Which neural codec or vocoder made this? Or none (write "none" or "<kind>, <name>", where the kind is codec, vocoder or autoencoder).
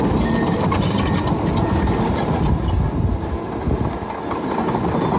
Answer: none